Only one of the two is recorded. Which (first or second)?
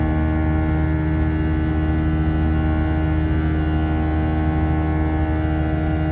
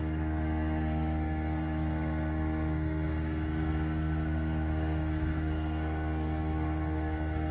first